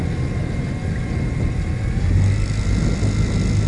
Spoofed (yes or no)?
no